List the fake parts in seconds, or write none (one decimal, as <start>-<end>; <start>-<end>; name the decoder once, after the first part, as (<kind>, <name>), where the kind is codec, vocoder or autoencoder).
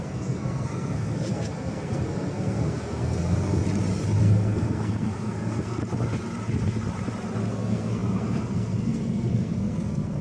0.0-3.6 (codec, SNAC); 4.2-5.8; 7.5-10.2